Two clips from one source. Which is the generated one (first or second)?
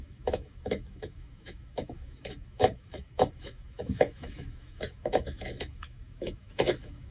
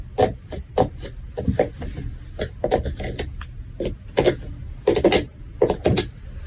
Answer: first